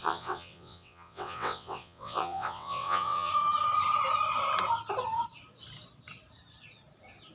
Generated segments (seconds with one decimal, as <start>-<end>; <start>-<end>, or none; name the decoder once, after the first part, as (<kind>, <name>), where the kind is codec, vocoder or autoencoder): 0.0-3.3 (vocoder, WaveNeXt)